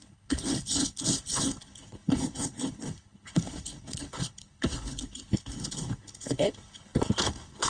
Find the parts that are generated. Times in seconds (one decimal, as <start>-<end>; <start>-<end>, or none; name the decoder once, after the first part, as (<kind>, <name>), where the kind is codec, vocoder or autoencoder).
0.0-7.7 (codec, HILCodec)